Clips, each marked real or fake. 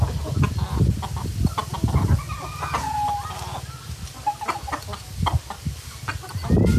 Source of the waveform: real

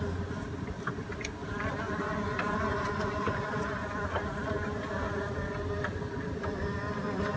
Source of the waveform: real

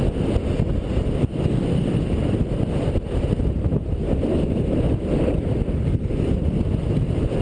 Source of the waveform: real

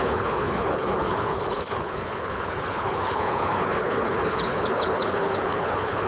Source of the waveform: fake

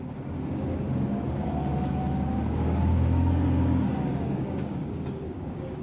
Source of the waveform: fake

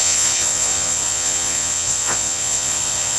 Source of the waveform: fake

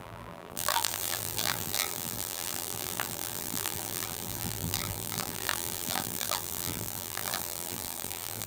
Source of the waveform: fake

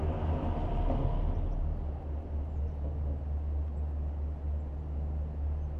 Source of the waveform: real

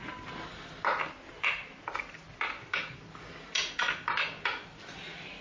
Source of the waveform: real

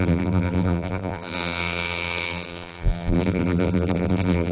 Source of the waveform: fake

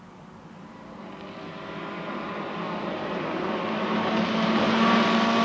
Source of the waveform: real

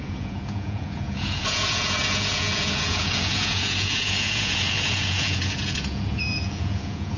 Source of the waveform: fake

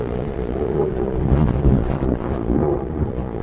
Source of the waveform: fake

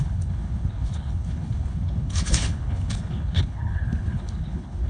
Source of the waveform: fake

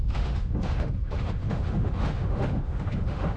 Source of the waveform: fake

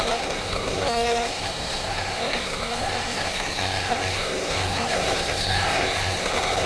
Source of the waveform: fake